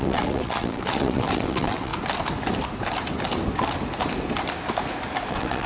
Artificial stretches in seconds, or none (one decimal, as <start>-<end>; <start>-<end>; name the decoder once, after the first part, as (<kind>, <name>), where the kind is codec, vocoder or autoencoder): 0.0-1.9 (vocoder, WaveNeXt); 5.3-5.7